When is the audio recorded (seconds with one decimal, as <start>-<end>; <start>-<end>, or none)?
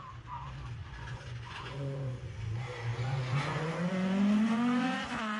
0.0-0.8; 2.4-2.9